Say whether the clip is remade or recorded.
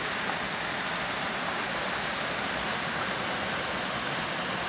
recorded